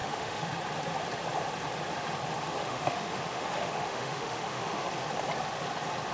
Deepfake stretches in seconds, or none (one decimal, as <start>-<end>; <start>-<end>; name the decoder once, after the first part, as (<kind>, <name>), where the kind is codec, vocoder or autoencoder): 0.0-0.5 (autoencoder, DAC-VAE); 2.6-4.9